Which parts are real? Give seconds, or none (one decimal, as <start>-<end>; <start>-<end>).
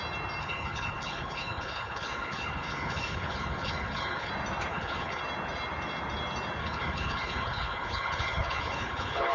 0.0-0.4; 4.3-4.7; 5.2-6.6